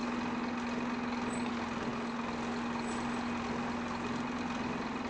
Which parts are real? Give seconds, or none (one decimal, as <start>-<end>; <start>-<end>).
0.0-5.1